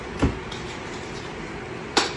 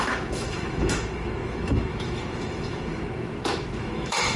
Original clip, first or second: first